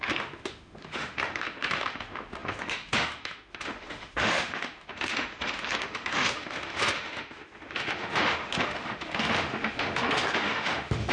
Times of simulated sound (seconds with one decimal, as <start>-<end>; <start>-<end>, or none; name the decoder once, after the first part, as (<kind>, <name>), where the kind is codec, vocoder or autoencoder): 0.0-11.1 (autoencoder, DAC-VAE)